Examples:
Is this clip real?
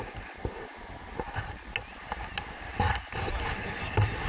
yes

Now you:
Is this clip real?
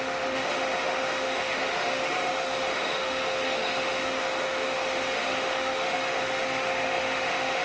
no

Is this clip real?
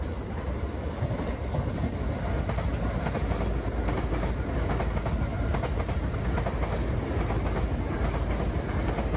yes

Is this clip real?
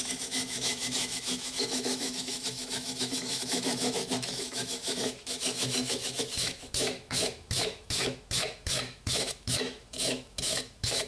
no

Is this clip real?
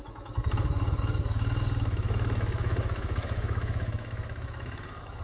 no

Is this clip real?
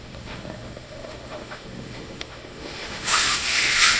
no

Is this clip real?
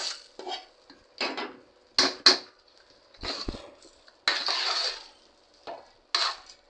yes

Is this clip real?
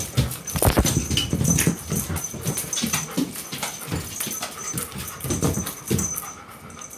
yes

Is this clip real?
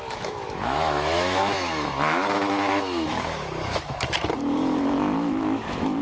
no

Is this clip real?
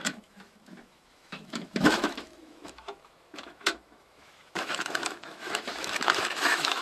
no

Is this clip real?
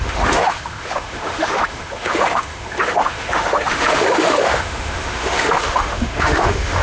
no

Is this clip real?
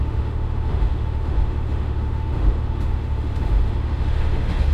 no